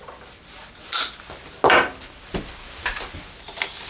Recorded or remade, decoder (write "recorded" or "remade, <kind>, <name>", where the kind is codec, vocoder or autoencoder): recorded